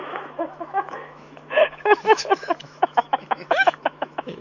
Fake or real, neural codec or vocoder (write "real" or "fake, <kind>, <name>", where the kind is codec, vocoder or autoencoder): fake, autoencoder, DAC-VAE